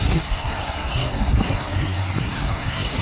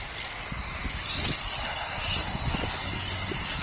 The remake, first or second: first